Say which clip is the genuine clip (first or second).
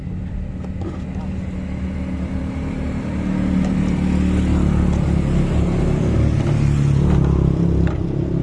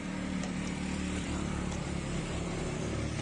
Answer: first